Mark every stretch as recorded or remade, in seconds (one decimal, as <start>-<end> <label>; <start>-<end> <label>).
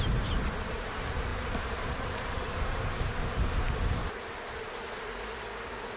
0.0-4.0 remade; 4.0-5.6 recorded; 5.6-6.0 remade